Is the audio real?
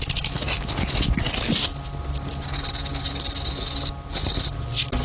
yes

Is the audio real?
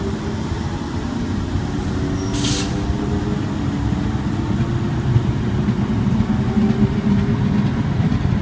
yes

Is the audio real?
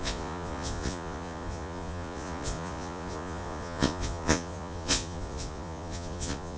no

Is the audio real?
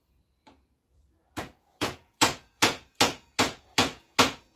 no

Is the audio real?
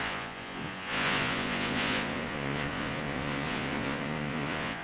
no